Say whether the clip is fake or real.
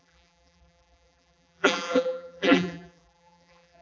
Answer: fake